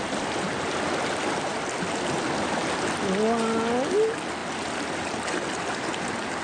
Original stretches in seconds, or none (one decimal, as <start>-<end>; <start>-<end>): 0.0-6.4